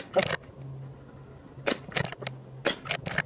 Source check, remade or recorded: recorded